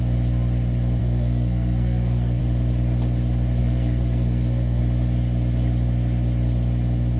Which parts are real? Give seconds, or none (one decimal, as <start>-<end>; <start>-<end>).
0.0-1.0; 2.4-3.6; 4.8-7.2